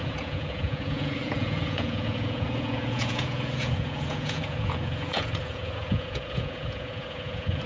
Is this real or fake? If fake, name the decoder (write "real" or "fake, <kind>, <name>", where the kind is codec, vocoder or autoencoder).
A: fake, vocoder, Vocos